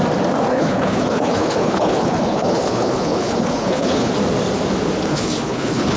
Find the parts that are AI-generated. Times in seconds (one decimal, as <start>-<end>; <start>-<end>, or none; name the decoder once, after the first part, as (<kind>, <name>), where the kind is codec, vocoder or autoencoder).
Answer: 0.5-4.1 (codec, HILCodec); 5.1-6.0